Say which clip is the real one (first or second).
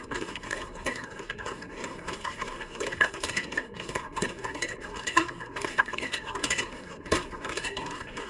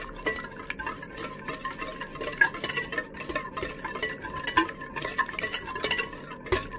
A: second